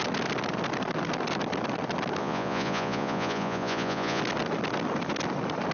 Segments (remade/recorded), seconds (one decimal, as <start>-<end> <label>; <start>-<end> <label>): 0.0-2.2 recorded; 2.2-4.2 remade; 4.2-5.7 recorded